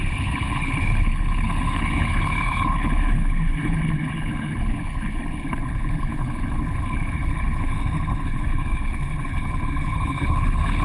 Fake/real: fake